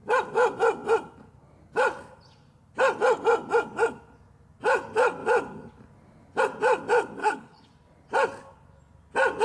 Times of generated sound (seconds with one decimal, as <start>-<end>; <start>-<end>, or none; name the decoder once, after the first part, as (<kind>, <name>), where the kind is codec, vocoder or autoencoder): 7.2-7.7 (codec, HILCodec)